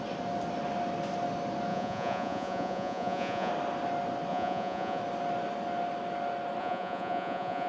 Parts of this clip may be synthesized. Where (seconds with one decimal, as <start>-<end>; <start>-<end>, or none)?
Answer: 1.7-3.5; 4.3-5.0; 6.6-7.7